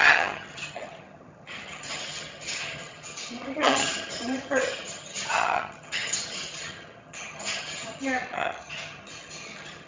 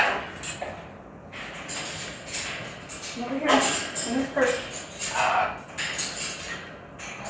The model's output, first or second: first